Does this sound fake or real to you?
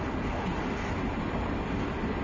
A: real